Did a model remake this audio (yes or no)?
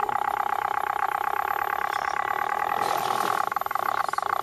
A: no